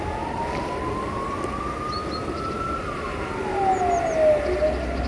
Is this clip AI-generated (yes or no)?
no